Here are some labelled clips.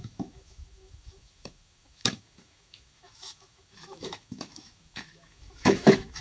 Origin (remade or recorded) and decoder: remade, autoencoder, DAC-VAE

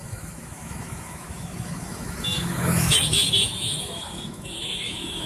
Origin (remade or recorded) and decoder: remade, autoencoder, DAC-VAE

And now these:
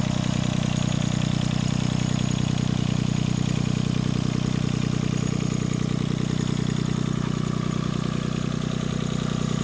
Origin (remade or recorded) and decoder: recorded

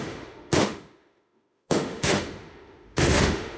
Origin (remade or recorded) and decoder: remade, autoencoder, DAC-VAE